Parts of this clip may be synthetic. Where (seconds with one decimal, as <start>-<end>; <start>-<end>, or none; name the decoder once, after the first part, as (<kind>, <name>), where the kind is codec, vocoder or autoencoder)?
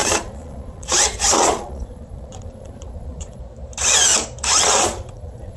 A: 0.0-3.4 (vocoder, Vocos); 4.5-5.6